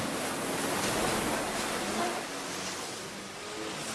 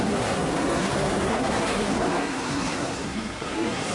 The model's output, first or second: second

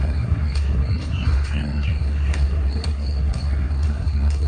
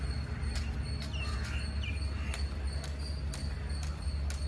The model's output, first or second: first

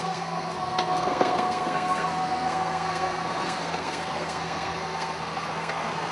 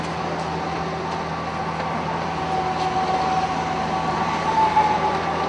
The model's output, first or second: first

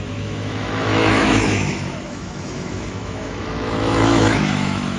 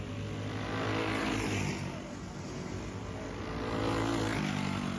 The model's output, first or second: first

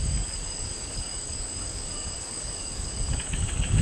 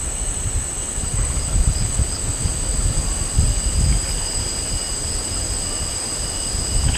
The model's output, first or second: first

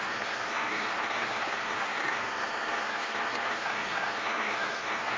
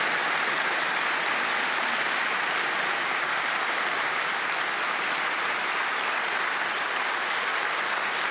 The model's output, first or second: first